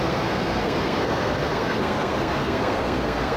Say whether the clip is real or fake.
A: fake